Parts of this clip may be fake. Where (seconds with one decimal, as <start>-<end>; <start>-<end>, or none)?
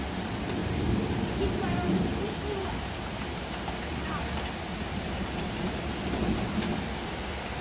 0.6-4.1; 4.7-5.8